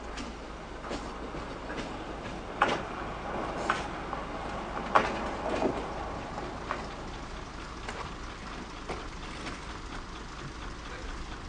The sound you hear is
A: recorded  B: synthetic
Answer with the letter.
A